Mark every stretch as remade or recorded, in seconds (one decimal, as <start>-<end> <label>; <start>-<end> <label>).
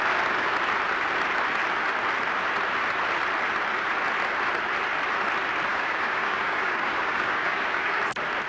0.0-5.7 recorded; 5.7-8.0 remade; 8.0-8.5 recorded